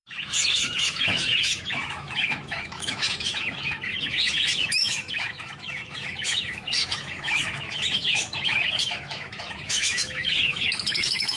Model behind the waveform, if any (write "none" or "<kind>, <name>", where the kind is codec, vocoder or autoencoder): autoencoder, DAC-VAE